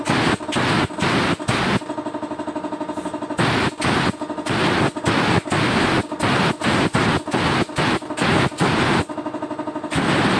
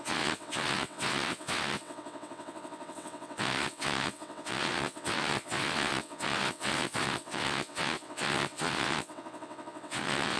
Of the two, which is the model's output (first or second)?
second